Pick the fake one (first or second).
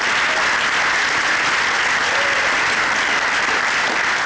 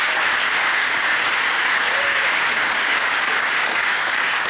second